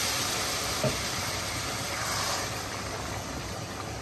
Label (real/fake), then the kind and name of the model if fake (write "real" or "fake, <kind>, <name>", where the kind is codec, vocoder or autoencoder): fake, vocoder, BigVGAN v2